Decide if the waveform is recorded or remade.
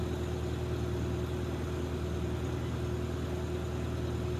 recorded